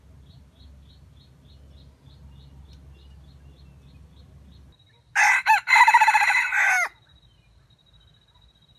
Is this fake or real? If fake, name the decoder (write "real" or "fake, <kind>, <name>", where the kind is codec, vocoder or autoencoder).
real